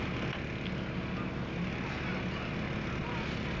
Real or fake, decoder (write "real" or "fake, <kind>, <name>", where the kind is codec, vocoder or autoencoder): real